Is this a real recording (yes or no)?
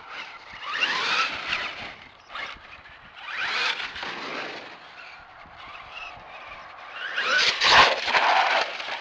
no